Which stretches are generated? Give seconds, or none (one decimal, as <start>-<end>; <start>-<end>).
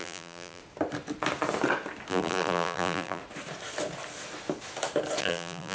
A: 0.0-0.6; 2.1-3.2; 5.2-5.7